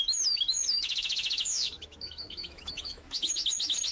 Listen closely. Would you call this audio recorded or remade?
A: remade